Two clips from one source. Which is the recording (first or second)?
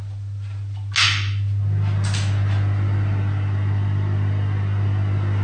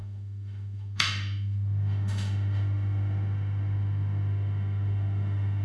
first